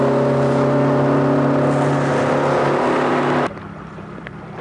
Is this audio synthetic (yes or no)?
no